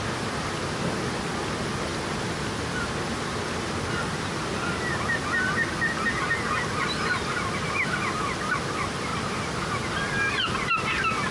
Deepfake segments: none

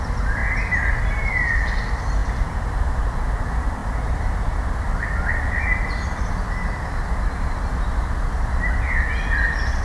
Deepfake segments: none